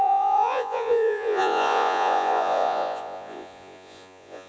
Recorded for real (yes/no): no